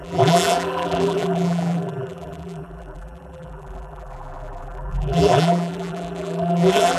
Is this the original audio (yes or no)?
no